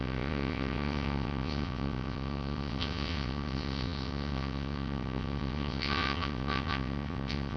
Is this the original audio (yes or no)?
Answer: no